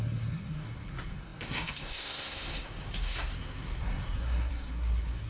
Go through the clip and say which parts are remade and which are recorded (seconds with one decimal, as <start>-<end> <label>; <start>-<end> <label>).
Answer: 0.0-5.3 remade